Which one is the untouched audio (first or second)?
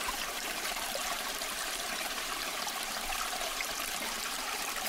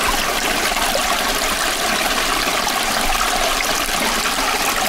second